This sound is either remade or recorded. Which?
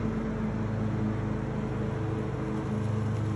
recorded